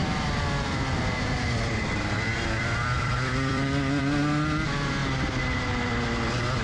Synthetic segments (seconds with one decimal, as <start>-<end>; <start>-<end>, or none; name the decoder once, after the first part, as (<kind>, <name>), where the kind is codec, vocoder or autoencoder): 0.0-4.0 (vocoder, BigVGAN v2); 5.0-5.7